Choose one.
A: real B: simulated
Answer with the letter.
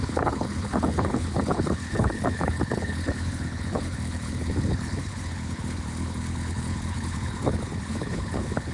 B